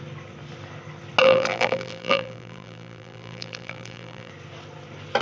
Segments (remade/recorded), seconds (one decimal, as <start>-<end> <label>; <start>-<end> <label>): 0.0-1.2 recorded; 1.2-4.3 remade; 4.3-5.2 recorded